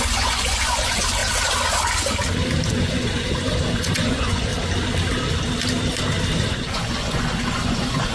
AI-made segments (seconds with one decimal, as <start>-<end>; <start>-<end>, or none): 0.0-1.2; 2.7-4.5; 6.5-8.1

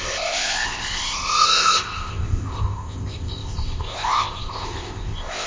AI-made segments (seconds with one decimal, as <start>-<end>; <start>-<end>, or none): 0.0-5.5

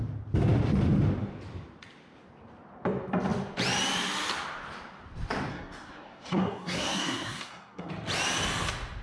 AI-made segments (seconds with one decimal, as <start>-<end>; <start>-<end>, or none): 5.5-7.9

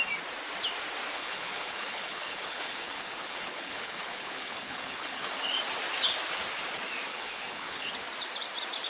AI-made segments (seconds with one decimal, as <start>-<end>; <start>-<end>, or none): 1.1-5.3; 7.1-7.9

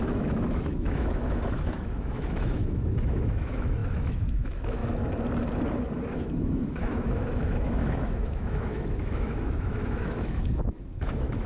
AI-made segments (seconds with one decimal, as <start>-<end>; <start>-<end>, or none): 0.0-4.8; 6.1-11.5

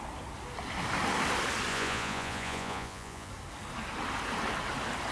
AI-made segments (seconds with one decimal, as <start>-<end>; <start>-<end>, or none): 1.7-3.3